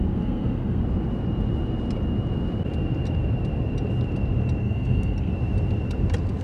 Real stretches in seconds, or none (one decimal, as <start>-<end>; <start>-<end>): 0.8-4.6; 5.3-6.4